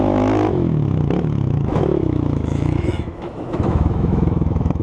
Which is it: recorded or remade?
remade